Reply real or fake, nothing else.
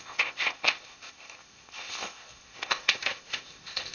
fake